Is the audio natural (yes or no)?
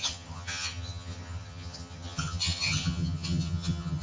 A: no